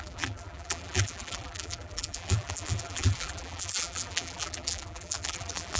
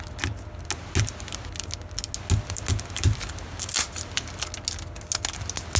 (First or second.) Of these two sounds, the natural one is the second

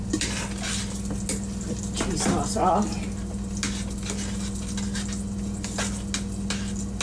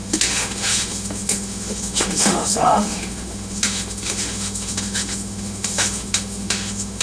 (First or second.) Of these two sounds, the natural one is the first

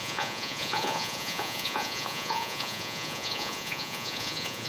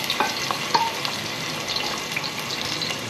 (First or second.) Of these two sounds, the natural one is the second